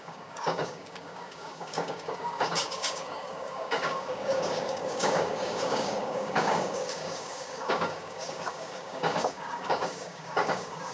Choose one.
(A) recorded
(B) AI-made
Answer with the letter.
B